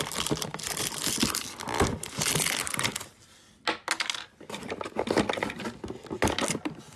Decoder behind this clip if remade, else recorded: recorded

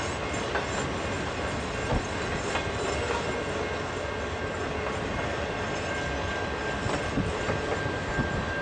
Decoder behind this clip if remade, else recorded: recorded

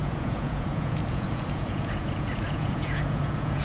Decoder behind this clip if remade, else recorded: remade, vocoder, Vocos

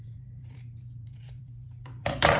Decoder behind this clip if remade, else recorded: remade, vocoder, BigVGAN v2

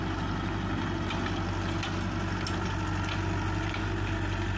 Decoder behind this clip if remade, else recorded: recorded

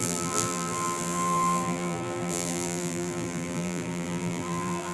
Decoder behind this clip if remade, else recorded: remade, vocoder, BigVGAN v2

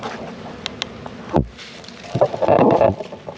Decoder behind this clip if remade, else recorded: recorded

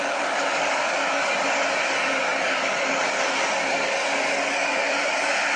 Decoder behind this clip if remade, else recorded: remade, codec, DAC